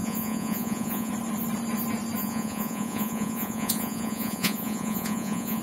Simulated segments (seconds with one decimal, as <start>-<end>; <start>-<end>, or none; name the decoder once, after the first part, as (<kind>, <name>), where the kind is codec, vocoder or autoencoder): 0.0-1.1 (vocoder, Vocos); 2.2-5.6